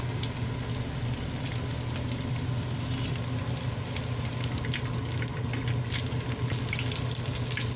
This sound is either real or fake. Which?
real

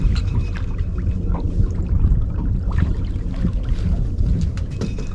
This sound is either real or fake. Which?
fake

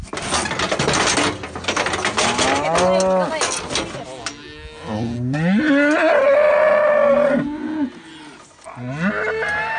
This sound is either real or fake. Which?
real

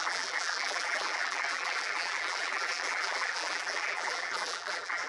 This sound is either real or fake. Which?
fake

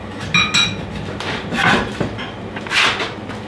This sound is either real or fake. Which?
real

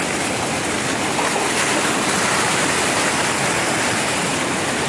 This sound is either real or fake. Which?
real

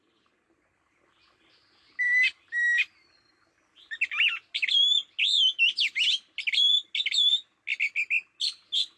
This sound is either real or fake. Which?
real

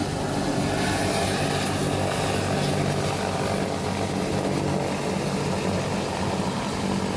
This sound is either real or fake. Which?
real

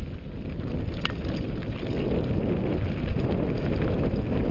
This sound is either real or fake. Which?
real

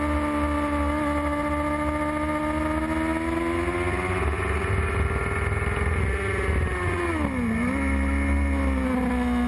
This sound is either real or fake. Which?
real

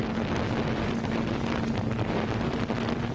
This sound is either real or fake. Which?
real